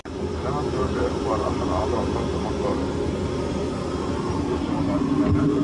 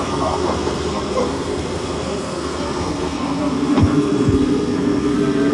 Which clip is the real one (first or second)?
first